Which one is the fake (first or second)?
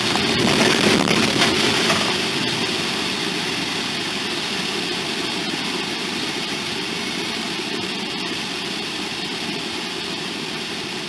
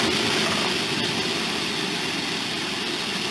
first